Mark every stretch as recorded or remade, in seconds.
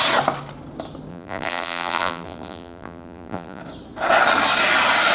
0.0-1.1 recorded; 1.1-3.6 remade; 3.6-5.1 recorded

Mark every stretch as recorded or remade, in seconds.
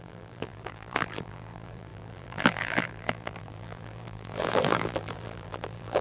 0.0-6.0 remade